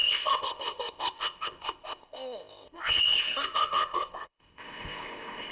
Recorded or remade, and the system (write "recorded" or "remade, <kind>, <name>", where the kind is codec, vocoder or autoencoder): remade, codec, ZipCodec